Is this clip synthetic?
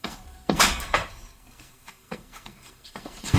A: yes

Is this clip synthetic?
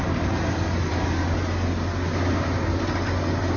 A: no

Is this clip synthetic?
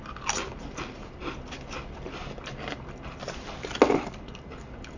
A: no